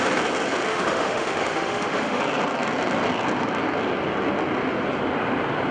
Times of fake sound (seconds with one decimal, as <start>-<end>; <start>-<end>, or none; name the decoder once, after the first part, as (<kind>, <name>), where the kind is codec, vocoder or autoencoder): 0.7-2.2 (autoencoder, DAC-VAE)